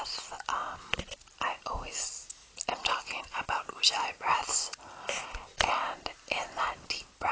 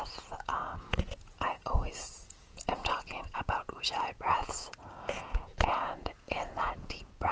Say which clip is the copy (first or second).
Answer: second